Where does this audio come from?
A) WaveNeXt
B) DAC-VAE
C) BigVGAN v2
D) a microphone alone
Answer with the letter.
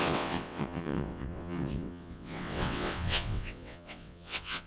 A